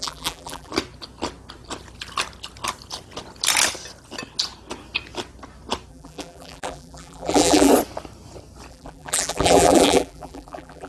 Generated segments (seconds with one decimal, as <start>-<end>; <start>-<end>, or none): 0.0-0.7; 5.9-7.7; 8.7-10.9